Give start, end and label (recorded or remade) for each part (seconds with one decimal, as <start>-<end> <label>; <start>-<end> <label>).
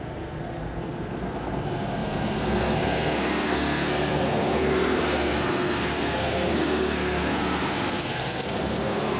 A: 0.0-9.2 remade